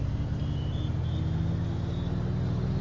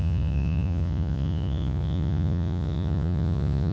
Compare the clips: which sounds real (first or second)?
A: first